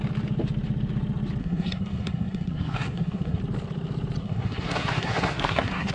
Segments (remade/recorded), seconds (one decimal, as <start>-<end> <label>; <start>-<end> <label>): 0.0-1.4 recorded; 1.4-3.4 remade; 3.4-4.2 recorded; 4.2-5.9 remade